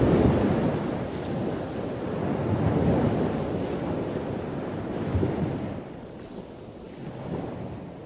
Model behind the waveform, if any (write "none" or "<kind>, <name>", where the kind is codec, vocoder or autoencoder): none